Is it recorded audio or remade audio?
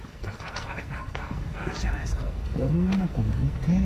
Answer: remade